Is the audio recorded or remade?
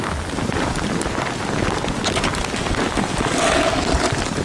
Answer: recorded